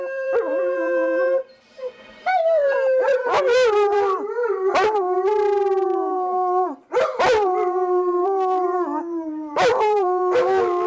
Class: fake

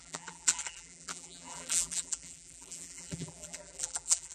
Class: fake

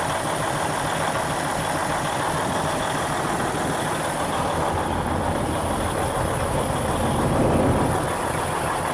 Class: real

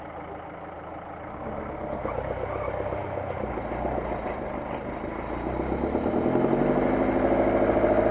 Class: real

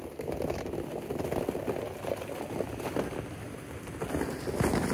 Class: real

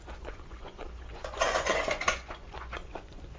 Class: fake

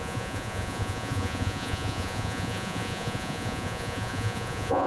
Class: fake